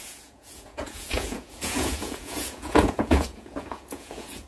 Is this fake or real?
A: fake